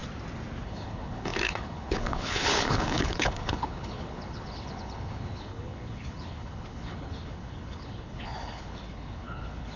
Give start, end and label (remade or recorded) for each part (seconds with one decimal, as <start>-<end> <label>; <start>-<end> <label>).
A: 0.0-0.6 recorded; 0.6-9.8 remade